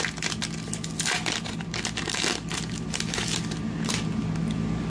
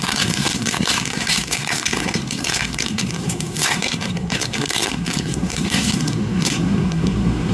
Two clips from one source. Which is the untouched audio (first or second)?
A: first